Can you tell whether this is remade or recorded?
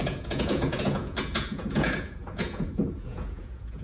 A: remade